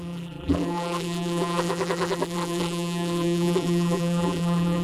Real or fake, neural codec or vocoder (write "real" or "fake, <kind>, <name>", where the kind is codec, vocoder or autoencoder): fake, vocoder, BigVGAN v2